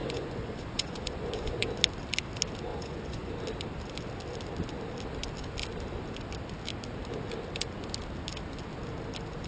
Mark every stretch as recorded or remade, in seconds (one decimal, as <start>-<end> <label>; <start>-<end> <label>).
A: 0.0-1.7 remade; 1.7-2.7 recorded; 2.7-3.3 remade; 3.3-9.5 recorded